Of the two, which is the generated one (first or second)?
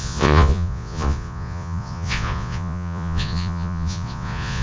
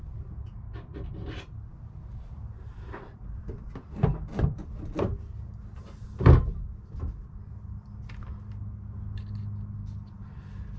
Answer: first